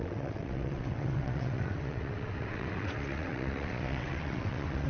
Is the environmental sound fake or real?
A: fake